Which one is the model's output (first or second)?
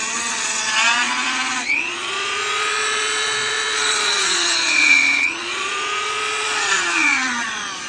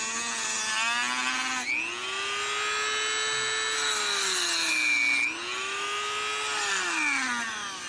first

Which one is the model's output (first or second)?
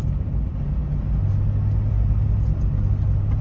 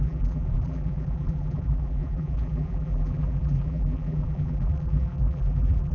second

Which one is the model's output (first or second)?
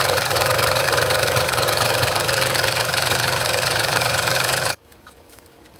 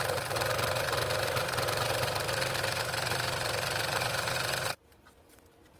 first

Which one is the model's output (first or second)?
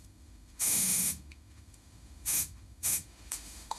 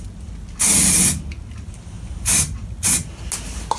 first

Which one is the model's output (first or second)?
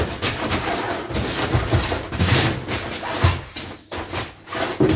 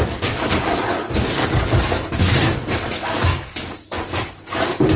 second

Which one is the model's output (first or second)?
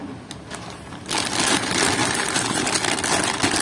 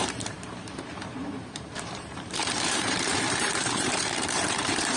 second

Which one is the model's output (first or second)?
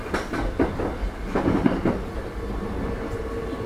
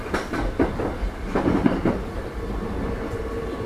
second